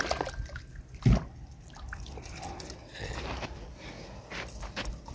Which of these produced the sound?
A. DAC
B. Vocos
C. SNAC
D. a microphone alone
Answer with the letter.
D